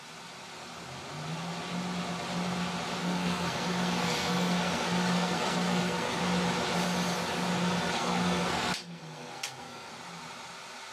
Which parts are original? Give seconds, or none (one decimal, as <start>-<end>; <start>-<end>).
0.0-3.0; 6.2-7.6; 9.9-10.9